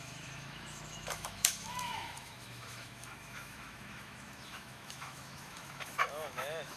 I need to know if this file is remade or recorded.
remade